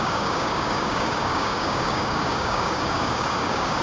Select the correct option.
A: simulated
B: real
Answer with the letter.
A